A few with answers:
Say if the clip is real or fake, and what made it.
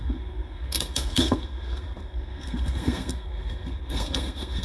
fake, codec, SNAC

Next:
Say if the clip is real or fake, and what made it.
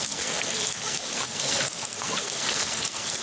fake, codec, SNAC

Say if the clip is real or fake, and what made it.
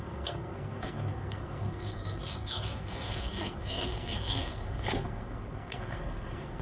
fake, codec, SNAC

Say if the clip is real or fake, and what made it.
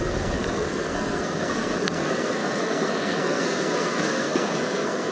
fake, codec, SNAC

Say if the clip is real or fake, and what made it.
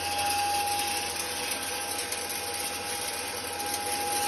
real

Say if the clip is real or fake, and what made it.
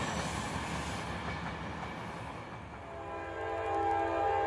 real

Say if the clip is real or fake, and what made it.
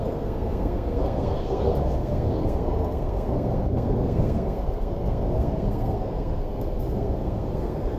fake, codec, SNAC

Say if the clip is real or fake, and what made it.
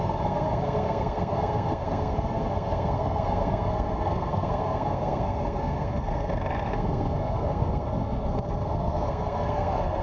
fake, codec, SNAC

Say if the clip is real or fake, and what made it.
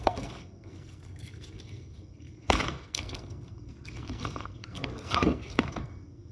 fake, codec, SNAC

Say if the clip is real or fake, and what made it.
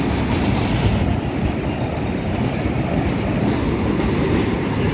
real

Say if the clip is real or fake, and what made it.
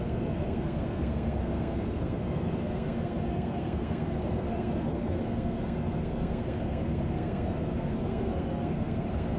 fake, codec, SNAC